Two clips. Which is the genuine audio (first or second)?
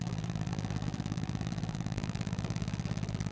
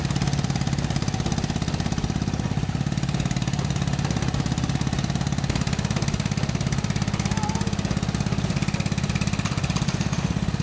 second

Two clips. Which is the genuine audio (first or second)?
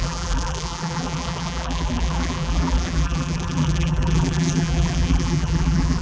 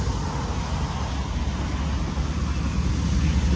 second